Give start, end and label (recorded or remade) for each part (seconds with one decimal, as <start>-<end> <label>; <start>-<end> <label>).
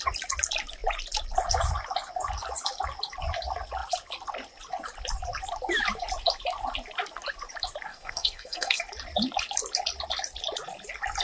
0.0-7.9 recorded; 7.9-8.8 remade; 8.8-11.2 recorded